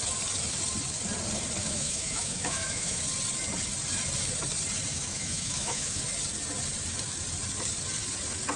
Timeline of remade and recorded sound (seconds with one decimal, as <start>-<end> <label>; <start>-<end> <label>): 0.0-1.6 recorded; 1.6-3.0 remade; 3.0-4.9 recorded; 4.9-6.0 remade; 6.0-8.6 recorded